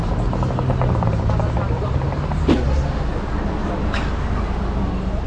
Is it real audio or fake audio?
real